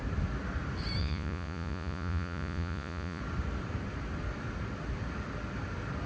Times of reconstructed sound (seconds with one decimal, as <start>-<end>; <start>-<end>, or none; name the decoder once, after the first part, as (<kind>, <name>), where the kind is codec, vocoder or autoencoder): 1.0-3.2 (vocoder, Vocos)